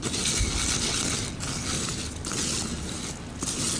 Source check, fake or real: real